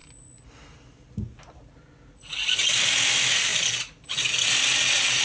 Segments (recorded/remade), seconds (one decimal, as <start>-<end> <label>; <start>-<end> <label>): 0.0-5.2 recorded